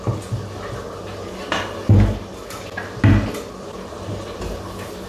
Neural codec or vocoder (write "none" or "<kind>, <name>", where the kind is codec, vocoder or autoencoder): none